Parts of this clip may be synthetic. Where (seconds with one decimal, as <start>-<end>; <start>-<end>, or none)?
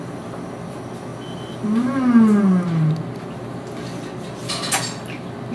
none